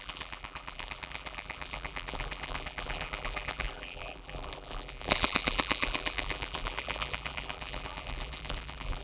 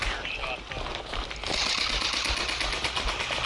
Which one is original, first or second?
second